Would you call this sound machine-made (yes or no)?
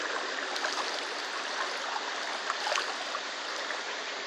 no